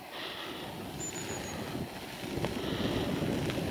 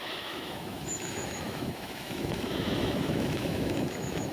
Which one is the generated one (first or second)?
second